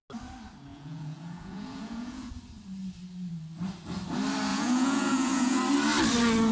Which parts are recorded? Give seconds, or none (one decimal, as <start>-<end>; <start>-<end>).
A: 0.0-0.7; 2.3-4.5; 5.6-6.5

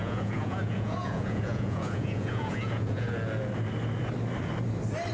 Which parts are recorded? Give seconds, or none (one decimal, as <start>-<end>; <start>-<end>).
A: 3.1-5.1

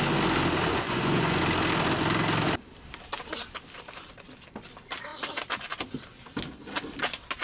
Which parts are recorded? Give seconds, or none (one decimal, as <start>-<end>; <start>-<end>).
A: 0.0-0.7; 1.4-7.4